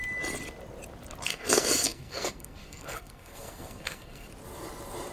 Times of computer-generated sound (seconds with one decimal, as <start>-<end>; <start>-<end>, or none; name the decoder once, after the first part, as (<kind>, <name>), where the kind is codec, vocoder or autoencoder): 1.3-4.3 (codec, SNAC)